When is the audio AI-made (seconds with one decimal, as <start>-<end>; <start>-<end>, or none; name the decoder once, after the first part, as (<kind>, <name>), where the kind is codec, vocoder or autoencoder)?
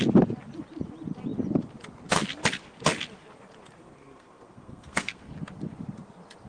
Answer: 3.8-5.3 (codec, SNAC)